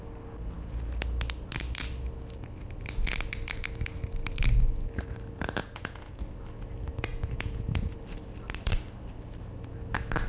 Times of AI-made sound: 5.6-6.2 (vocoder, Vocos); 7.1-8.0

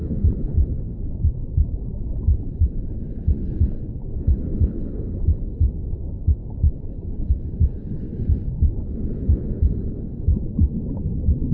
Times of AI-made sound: 0.0-11.5 (codec, HILCodec)

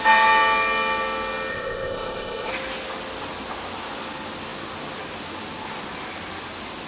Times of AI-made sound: 1.5-2.5 (codec, ZipCodec)

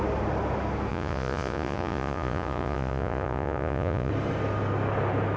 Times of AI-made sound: 0.9-4.1 (vocoder, Vocos)

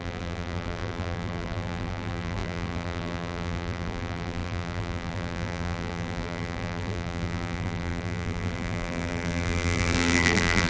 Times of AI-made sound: 0.0-10.7 (vocoder, BigVGAN v2)

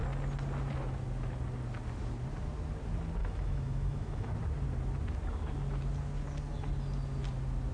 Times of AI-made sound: 3.2-4.3 (autoencoder, DAC-VAE)

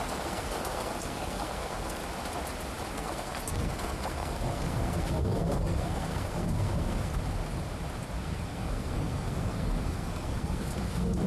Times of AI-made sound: 0.0-2.0 (codec, SNAC); 2.9-7.1; 8.2-11.3

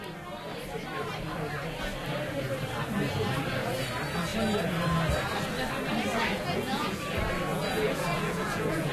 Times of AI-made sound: 6.3-7.0 (vocoder, Vocos); 7.5-8.9